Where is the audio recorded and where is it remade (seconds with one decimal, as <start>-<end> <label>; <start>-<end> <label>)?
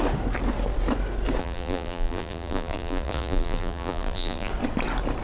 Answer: 0.0-1.4 recorded; 1.4-4.5 remade; 4.5-5.2 recorded